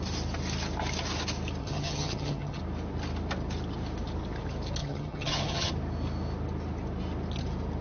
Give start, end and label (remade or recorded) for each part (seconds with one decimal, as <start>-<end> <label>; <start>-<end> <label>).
0.0-1.6 recorded; 1.6-2.6 remade; 2.6-4.8 recorded; 4.8-5.7 remade; 5.7-7.8 recorded